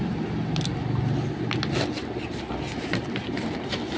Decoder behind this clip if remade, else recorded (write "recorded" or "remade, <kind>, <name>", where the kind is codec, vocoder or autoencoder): recorded